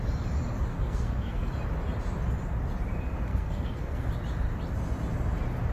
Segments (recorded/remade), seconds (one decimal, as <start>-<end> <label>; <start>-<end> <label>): 0.0-0.7 recorded; 0.7-1.5 remade; 1.5-3.3 recorded; 3.3-4.1 remade; 4.1-5.7 recorded

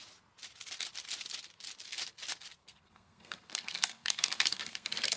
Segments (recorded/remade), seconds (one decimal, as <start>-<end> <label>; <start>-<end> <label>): 0.0-2.6 recorded; 2.6-5.2 remade

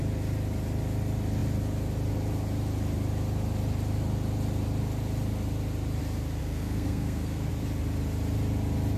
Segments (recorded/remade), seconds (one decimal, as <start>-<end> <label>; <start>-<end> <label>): 0.0-6.4 recorded; 6.4-7.5 remade; 7.5-9.0 recorded

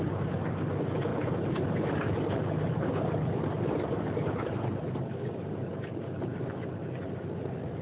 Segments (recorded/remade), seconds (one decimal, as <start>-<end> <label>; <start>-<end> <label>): 0.0-7.8 recorded

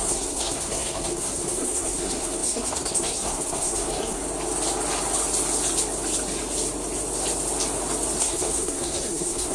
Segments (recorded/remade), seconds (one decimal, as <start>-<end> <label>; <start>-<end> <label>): 0.0-4.2 remade; 4.2-8.2 recorded; 8.2-9.5 remade